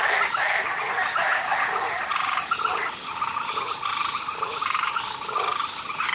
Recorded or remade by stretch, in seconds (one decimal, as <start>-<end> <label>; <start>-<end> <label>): 0.0-6.1 recorded